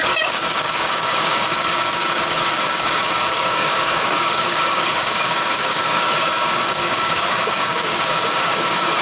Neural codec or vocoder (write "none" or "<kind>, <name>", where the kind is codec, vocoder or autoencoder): codec, DAC